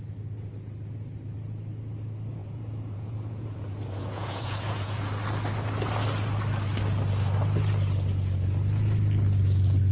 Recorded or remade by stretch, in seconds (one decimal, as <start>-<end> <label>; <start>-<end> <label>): 0.0-2.4 recorded; 2.4-5.0 remade; 5.0-9.9 recorded